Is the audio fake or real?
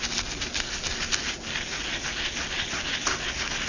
real